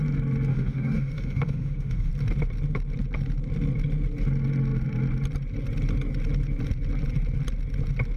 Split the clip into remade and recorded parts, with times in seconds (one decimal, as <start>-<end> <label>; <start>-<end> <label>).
0.0-0.5 recorded; 0.5-2.1 remade; 2.1-8.2 recorded